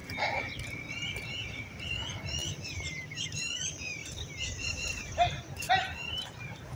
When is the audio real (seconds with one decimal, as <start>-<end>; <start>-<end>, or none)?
0.0-0.9